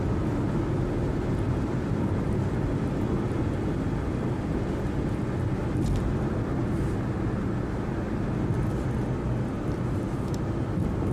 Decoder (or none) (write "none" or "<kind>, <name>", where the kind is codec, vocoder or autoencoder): none